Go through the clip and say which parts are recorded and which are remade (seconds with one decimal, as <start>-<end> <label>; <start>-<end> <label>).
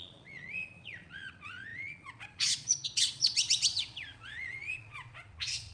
0.0-5.7 remade